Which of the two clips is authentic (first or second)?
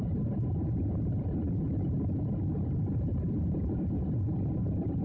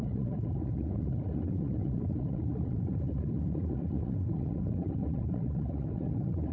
first